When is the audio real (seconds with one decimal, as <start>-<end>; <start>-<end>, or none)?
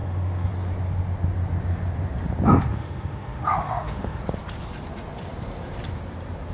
0.5-2.7; 4.2-6.5